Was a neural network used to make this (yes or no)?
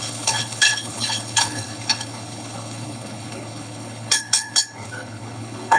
yes